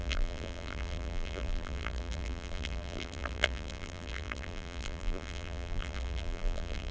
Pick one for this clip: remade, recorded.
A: remade